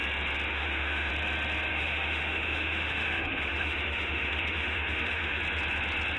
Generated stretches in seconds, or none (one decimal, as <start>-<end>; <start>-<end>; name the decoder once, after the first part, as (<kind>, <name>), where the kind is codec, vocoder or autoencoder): 0.5-1.1 (autoencoder, DAC-VAE); 1.7-5.4